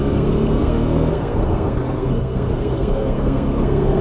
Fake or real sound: fake